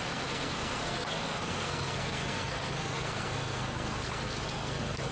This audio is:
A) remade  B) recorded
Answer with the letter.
A